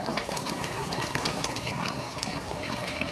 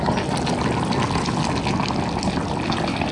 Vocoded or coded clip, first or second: first